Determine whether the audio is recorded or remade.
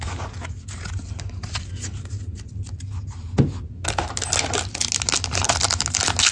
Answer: recorded